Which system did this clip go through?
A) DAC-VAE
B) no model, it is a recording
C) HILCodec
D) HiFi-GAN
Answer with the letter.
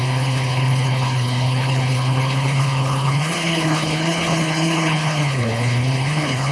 C